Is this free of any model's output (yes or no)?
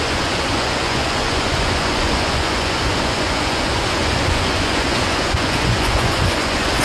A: no